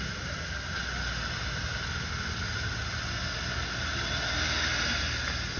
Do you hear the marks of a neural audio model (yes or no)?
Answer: no